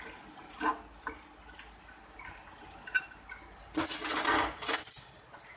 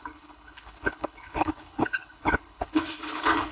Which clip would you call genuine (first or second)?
first